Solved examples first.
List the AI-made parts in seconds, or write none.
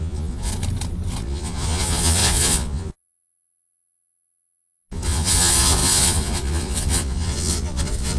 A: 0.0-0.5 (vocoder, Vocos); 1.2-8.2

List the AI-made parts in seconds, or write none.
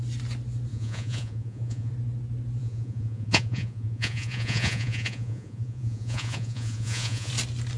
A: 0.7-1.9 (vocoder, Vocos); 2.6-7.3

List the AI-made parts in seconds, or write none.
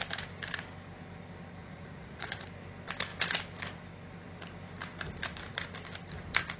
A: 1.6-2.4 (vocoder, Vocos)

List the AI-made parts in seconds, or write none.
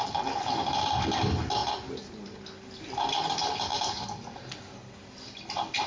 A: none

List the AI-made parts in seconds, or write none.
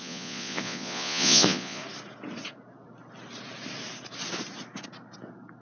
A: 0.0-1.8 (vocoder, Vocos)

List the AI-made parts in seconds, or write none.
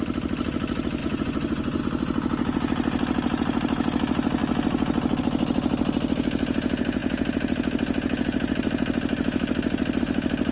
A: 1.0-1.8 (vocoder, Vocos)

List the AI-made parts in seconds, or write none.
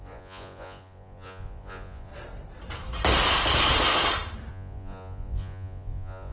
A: 0.0-2.1 (vocoder, Vocos); 4.5-6.3